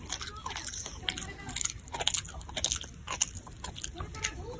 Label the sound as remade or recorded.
recorded